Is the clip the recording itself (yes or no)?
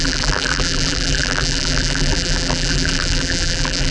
no